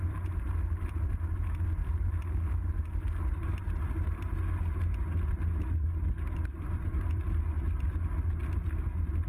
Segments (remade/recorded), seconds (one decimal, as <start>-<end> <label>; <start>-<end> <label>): 0.0-6.5 recorded; 6.5-7.9 remade; 7.9-9.3 recorded